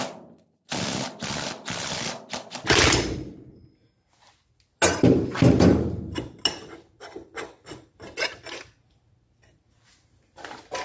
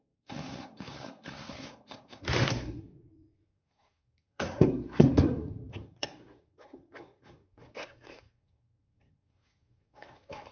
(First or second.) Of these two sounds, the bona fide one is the first